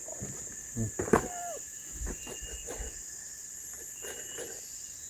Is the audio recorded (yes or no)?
yes